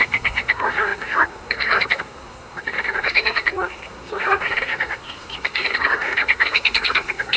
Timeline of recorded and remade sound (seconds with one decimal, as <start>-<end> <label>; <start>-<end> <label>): 0.0-7.4 remade